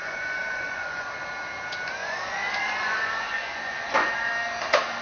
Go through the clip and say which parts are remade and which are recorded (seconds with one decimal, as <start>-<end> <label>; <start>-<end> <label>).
0.0-1.1 remade; 1.1-2.0 recorded; 2.0-4.3 remade; 4.3-5.0 recorded

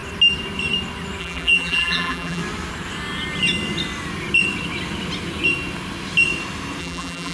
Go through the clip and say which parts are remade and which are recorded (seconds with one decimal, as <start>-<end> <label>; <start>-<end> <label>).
0.0-1.2 recorded; 1.2-2.4 remade; 2.4-6.8 recorded; 6.8-7.3 remade

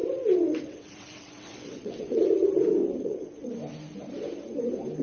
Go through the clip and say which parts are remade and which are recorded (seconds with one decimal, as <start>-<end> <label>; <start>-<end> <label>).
0.0-2.2 remade; 2.2-2.8 recorded; 2.8-3.5 remade; 3.5-5.0 recorded